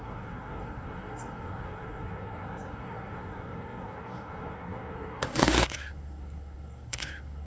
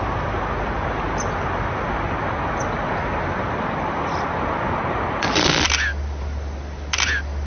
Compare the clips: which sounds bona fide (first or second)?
second